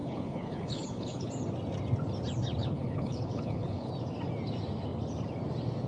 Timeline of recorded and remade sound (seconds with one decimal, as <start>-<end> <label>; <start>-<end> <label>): 0.0-1.3 remade; 1.3-2.6 recorded; 2.6-3.9 remade; 3.9-5.9 recorded